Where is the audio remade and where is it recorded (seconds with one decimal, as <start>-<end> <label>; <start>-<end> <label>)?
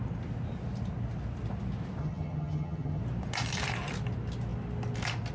0.0-2.0 recorded; 2.0-3.0 remade; 3.0-5.3 recorded